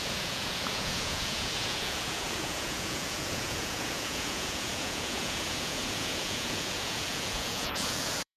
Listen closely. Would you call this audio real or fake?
fake